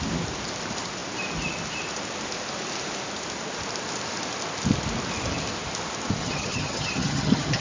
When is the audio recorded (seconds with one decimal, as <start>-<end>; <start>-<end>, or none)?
0.0-6.2